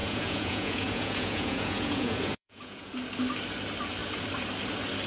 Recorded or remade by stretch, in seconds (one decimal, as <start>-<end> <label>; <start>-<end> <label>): 0.0-2.9 remade; 2.9-5.1 recorded